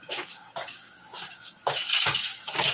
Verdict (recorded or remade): remade